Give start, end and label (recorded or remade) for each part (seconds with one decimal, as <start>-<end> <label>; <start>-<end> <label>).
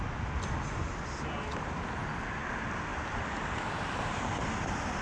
0.0-2.9 recorded; 2.9-4.0 remade; 4.0-5.0 recorded